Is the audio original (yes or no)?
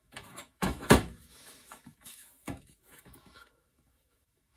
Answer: no